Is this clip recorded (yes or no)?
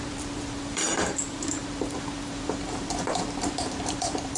no